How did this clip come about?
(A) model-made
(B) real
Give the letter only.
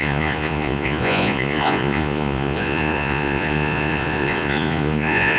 A